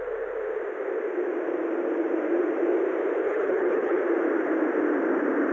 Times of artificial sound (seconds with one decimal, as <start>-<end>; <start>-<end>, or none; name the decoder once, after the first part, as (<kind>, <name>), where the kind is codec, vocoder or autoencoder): 3.2-4.0 (codec, HILCodec)